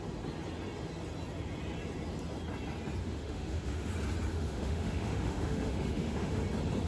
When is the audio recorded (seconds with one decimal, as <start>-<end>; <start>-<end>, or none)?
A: 0.0-3.0; 3.9-4.3; 6.4-6.9